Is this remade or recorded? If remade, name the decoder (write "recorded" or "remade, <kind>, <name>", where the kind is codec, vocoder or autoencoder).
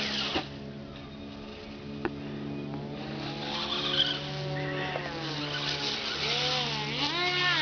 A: recorded